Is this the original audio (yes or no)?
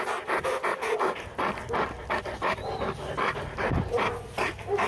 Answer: yes